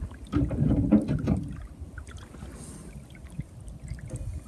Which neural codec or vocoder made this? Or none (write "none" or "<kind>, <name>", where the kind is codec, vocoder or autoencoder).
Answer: none